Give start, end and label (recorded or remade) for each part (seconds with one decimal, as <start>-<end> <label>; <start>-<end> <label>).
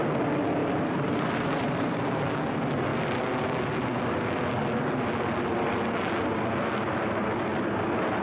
0.0-0.6 recorded; 0.6-2.2 remade; 2.2-8.2 recorded